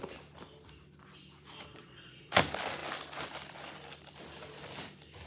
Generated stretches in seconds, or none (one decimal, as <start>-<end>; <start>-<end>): 1.7-2.4